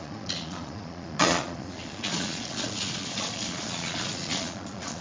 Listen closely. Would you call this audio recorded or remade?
remade